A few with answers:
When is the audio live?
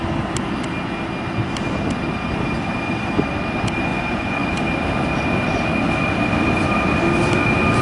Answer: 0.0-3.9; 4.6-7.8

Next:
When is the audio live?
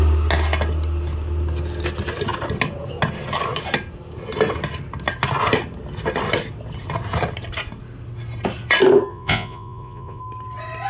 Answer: 0.0-9.1; 10.2-10.9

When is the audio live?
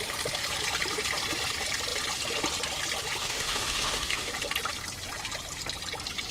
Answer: 0.0-3.2; 4.3-6.3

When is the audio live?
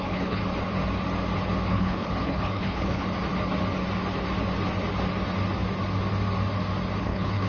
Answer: 0.4-1.7; 3.0-7.0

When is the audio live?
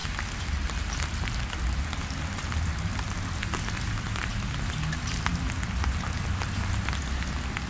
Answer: 0.0-7.7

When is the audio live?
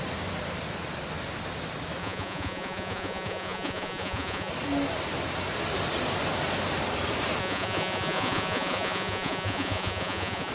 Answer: 0.0-2.0; 4.5-7.4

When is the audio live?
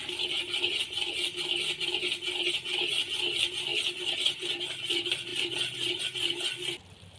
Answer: 0.0-7.2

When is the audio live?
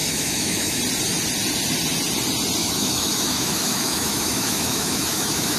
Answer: 0.8-2.6